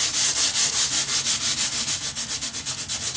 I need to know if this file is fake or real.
real